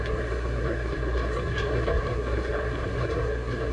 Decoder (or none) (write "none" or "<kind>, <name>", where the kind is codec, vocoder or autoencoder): codec, SNAC